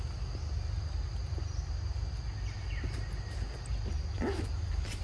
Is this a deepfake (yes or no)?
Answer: no